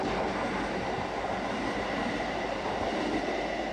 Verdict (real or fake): real